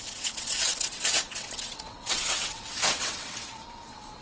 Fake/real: fake